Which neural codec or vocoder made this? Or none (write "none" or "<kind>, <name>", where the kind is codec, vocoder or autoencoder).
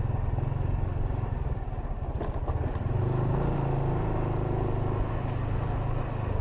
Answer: none